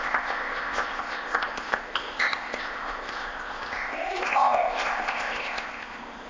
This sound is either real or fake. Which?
fake